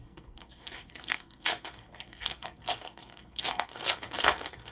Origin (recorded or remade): remade